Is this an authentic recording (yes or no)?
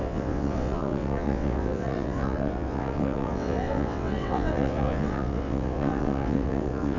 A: no